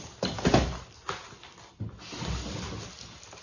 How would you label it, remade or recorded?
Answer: recorded